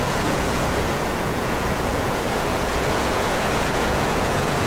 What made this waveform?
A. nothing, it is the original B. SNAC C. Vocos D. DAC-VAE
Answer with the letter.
C